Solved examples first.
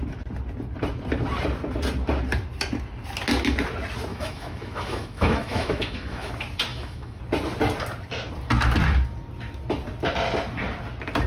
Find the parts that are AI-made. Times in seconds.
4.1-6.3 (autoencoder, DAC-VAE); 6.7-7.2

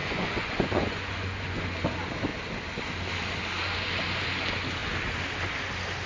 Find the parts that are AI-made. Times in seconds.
0.0-1.6 (vocoder, Vocos)

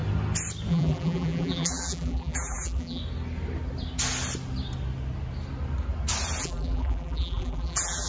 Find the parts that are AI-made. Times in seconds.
0.7-3.0 (vocoder, BigVGAN v2); 6.4-8.1

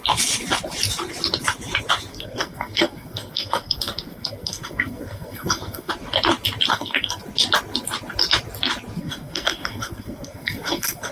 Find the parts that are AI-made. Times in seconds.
2.1-5.9 (codec, SNAC); 6.7-7.2; 9.0-11.1